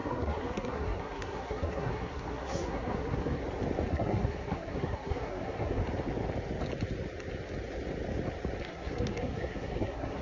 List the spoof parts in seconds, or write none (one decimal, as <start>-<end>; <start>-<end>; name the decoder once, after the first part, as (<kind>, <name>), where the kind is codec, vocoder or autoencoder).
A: 0.0-3.4 (codec, SNAC); 3.9-5.8; 8.6-10.2